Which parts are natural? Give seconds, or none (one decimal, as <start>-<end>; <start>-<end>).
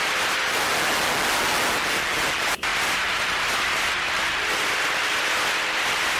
0.7-1.7